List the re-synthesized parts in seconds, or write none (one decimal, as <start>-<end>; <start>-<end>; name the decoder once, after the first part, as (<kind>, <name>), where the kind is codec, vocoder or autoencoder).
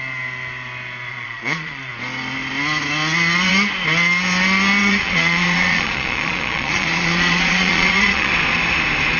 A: 1.1-1.9 (vocoder, Vocos); 4.8-8.3